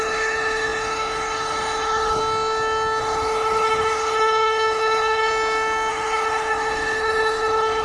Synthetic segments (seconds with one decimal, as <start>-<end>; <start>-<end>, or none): 0.0-2.2; 3.0-5.3; 5.9-7.8